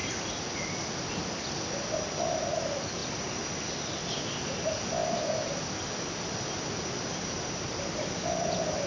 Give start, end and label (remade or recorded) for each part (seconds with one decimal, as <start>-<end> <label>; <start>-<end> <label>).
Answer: 0.0-8.9 recorded